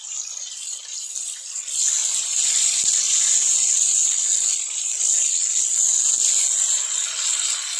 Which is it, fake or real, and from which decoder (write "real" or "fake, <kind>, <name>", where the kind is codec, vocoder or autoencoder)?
real